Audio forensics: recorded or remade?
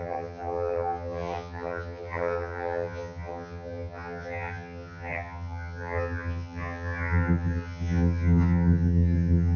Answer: remade